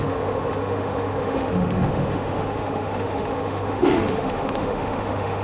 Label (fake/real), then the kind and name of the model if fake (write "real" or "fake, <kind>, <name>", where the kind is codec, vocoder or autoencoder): fake, autoencoder, DAC-VAE